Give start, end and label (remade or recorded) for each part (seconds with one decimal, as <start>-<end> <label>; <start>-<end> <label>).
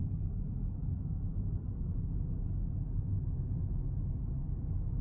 0.0-5.0 recorded